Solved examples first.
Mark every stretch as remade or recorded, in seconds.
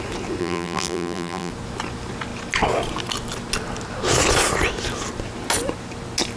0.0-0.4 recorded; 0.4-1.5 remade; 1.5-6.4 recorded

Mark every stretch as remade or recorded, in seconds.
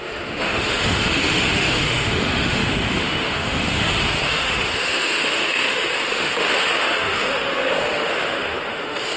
0.0-9.2 remade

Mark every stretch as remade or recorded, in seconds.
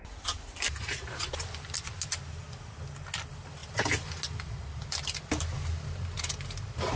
0.0-7.0 recorded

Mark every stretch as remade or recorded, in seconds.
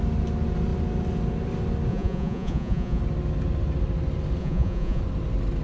0.0-1.9 recorded; 1.9-3.0 remade; 3.0-4.4 recorded; 4.4-5.0 remade; 5.0-5.6 recorded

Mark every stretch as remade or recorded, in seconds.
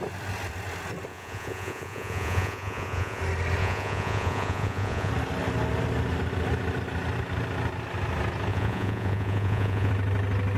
0.0-1.1 recorded; 1.1-3.2 remade; 3.2-3.6 recorded; 3.6-5.1 remade; 5.1-8.5 recorded; 8.5-9.9 remade; 9.9-10.6 recorded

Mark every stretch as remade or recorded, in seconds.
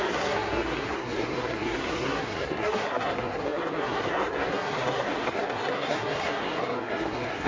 0.0-7.5 remade